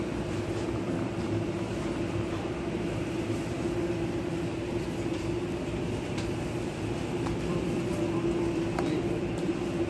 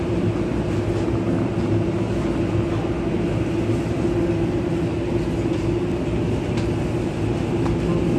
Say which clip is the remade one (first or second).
first